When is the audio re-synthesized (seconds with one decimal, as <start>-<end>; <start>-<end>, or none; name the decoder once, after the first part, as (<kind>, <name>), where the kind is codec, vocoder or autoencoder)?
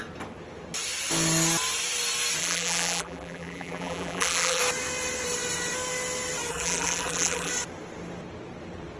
2.4-4.6 (vocoder, BigVGAN v2); 6.5-7.5